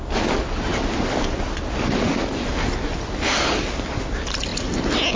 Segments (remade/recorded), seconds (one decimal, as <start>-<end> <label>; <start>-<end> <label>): 0.0-5.2 recorded